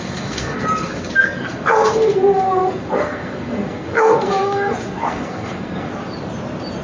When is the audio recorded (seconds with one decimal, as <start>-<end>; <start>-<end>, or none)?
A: 5.9-6.8